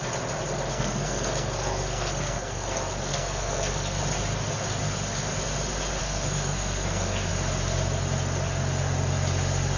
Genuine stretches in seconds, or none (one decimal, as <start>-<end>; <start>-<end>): 0.0-0.7; 4.0-6.0; 7.3-9.8